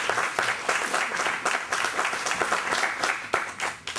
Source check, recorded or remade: recorded